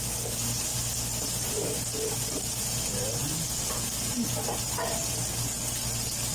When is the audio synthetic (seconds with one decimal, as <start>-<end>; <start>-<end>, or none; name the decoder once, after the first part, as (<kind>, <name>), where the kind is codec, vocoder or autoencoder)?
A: none